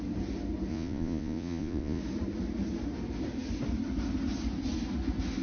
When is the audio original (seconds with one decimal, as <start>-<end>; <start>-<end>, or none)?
0.0-0.7; 2.0-5.4